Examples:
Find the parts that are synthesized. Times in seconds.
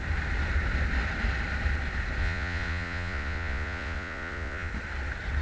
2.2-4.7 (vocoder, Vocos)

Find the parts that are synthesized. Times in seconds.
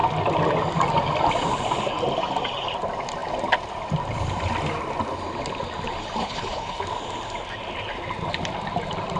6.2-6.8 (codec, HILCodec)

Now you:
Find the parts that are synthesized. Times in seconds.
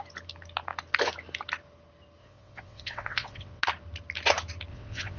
2.2-3.6 (vocoder, WaveNeXt); 4.7-5.2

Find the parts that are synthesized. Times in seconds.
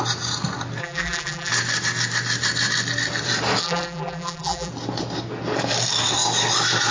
0.8-1.5 (vocoder, BigVGAN v2); 3.6-4.7